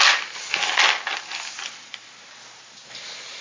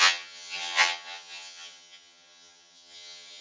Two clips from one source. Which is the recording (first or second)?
first